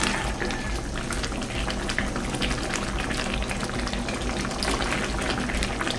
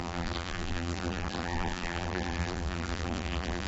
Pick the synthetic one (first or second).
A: second